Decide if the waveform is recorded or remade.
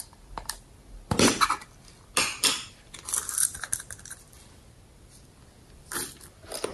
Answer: recorded